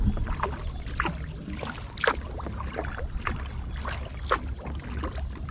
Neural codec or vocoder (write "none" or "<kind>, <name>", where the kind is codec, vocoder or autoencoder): none